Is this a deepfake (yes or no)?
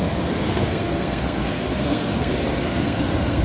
yes